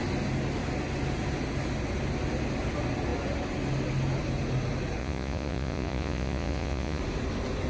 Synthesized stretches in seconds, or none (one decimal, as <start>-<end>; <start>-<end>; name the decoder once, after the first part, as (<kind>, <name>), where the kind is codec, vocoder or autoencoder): 5.0-7.0 (vocoder, Vocos)